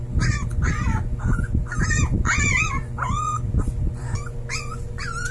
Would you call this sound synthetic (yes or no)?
yes